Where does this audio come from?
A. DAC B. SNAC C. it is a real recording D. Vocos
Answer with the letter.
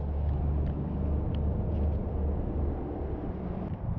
C